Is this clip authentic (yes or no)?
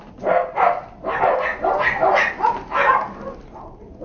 yes